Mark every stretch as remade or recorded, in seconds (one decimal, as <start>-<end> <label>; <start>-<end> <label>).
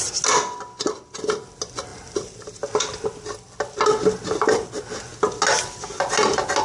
0.0-1.9 recorded; 1.9-3.6 remade; 3.6-6.6 recorded